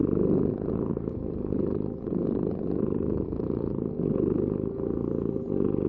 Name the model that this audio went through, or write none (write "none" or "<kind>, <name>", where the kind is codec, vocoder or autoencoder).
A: none